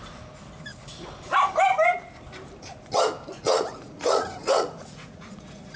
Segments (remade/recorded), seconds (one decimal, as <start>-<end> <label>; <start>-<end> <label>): 0.0-3.3 recorded; 3.3-5.8 remade